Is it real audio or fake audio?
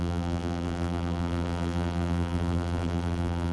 fake